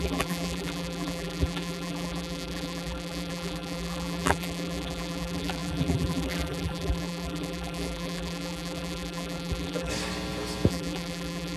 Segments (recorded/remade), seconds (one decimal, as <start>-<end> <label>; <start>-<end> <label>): 0.0-9.9 remade; 9.9-10.7 recorded; 10.7-11.6 remade